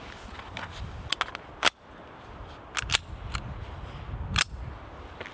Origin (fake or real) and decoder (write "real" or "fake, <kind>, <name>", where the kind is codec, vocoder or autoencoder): real